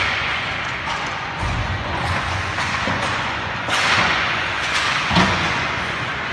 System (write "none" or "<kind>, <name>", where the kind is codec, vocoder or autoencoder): vocoder, Vocos